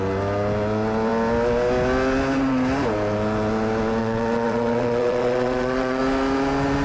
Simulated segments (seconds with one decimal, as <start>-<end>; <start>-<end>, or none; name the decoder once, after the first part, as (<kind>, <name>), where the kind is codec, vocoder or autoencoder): 4.0-6.0 (vocoder, WaveNeXt)